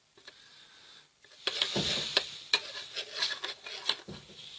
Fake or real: real